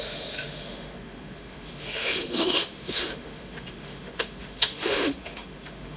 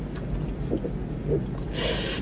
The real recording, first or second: second